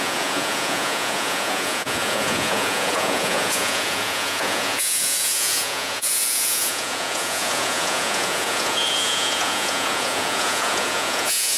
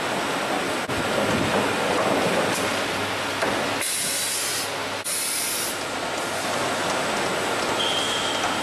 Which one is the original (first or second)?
second